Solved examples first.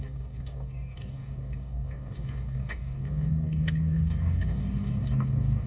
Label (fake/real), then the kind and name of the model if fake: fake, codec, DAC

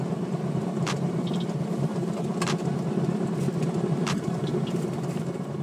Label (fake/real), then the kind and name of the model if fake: fake, vocoder, BigVGAN v2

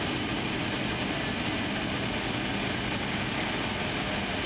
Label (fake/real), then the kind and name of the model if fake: real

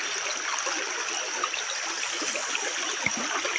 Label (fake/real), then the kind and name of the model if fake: real